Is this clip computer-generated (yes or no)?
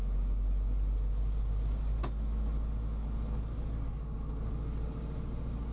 no